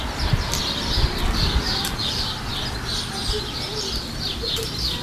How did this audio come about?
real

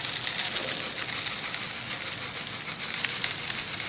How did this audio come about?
real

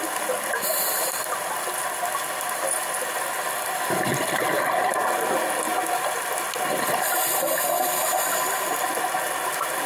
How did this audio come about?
real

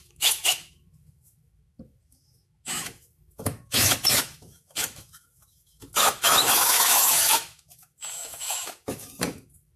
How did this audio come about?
fake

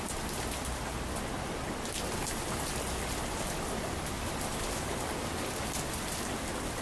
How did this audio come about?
real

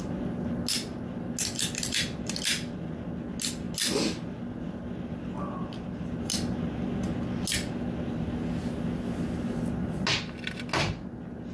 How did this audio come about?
real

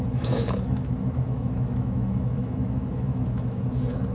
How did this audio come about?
fake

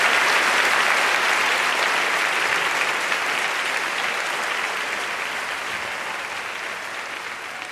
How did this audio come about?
real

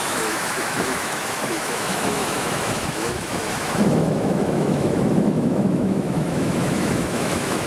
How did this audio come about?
fake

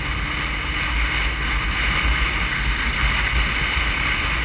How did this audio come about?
real